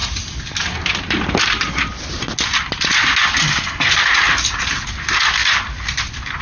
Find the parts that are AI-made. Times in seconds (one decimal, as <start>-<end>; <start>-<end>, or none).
0.0-1.9; 5.4-6.0